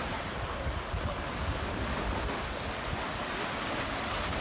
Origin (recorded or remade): recorded